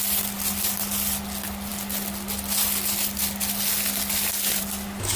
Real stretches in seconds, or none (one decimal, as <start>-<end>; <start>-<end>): 0.0-5.2